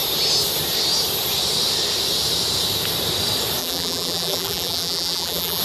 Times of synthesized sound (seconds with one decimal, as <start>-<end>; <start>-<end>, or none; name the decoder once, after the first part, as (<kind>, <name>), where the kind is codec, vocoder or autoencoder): 3.6-5.6 (vocoder, BigVGAN v2)